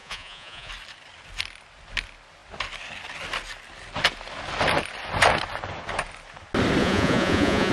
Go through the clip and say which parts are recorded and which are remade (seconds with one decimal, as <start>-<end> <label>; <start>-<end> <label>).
0.0-0.7 remade; 0.7-6.8 recorded; 6.8-7.7 remade